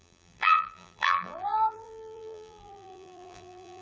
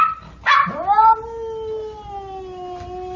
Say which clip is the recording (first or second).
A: second